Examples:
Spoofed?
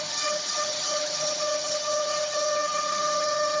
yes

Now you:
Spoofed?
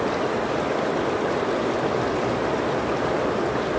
no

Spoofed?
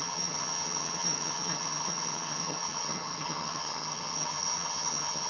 yes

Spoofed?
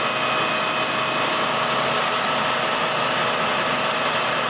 no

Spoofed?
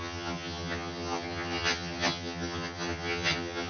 yes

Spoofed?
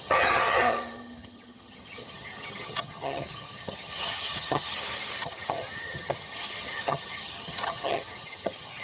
yes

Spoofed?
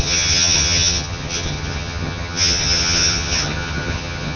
yes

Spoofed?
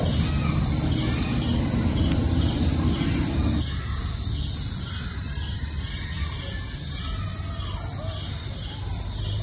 no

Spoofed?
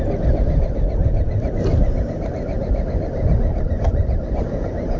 no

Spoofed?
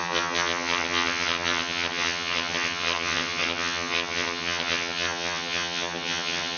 yes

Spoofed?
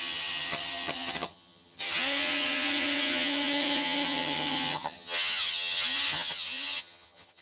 yes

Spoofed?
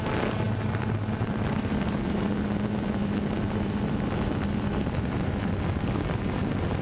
no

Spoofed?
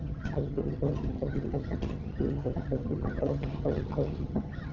yes